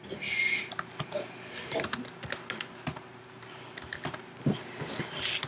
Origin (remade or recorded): recorded